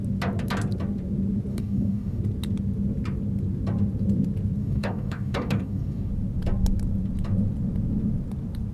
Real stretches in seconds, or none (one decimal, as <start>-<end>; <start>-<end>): 0.0-1.5; 2.2-4.6; 6.1-8.7